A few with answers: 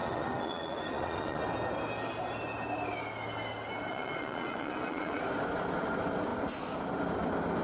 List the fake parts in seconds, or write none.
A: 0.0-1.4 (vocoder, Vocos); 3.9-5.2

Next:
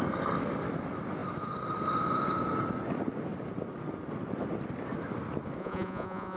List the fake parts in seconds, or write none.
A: 5.6-6.4 (vocoder, Vocos)

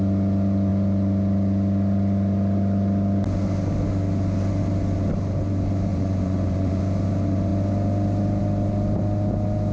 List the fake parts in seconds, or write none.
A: 5.9-6.8 (vocoder, Vocos)

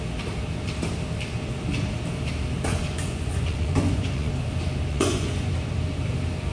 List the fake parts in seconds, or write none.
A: 2.7-4.3 (vocoder, Vocos); 4.9-5.7

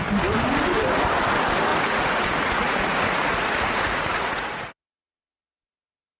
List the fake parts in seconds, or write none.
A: 1.7-5.4 (vocoder, Vocos)

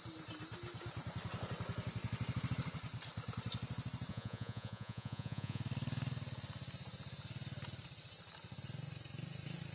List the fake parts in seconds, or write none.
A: 4.1-5.6 (vocoder, Vocos)